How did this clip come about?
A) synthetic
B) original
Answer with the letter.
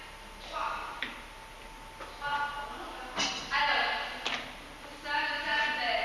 B